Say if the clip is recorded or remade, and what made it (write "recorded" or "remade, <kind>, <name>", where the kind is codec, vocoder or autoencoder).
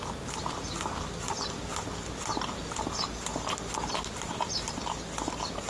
recorded